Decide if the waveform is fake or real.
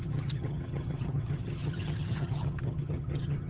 fake